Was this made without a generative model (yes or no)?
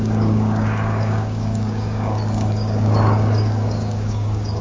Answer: no